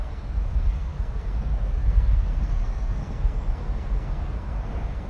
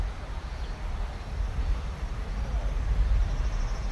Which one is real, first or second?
second